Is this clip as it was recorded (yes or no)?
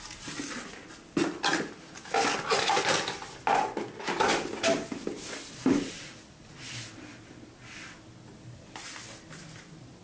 yes